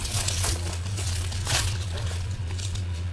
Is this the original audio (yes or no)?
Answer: no